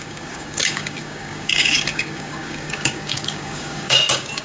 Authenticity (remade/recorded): remade